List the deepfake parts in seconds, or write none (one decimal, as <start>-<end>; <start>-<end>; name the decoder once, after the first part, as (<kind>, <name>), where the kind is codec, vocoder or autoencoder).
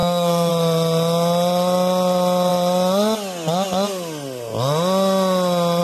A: 0.0-0.5 (codec, SNAC)